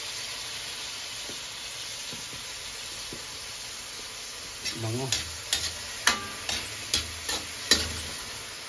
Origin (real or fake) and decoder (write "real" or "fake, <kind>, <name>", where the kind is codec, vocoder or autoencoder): real